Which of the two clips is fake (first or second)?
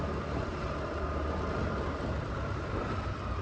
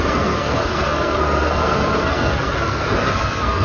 second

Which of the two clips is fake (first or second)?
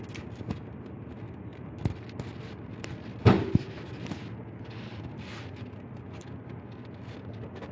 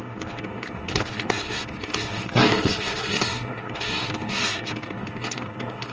second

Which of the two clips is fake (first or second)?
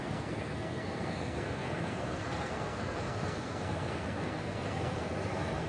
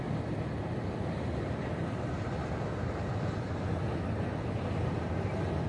first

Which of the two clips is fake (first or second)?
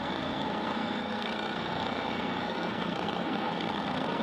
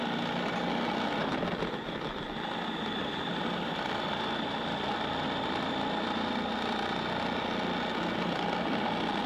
first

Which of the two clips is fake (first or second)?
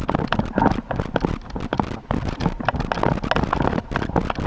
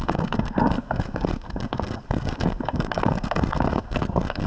second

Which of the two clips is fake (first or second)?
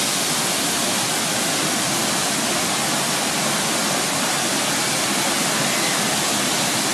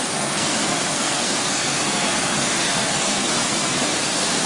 second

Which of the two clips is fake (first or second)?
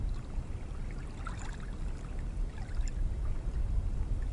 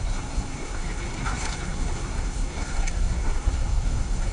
second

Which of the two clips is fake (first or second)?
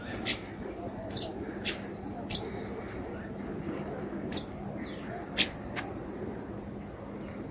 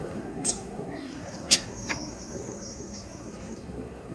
second